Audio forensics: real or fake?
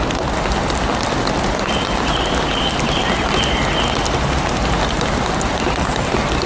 real